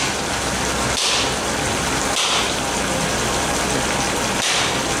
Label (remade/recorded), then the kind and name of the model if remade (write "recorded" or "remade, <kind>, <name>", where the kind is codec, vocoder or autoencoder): recorded